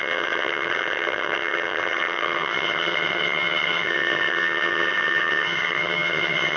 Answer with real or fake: fake